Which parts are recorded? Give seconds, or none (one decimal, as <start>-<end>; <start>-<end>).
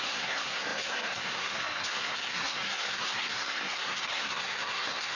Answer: none